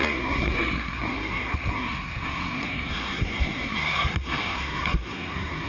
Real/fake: fake